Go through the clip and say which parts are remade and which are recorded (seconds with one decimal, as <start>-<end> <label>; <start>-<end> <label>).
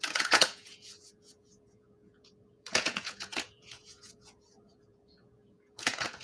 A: 0.0-6.2 remade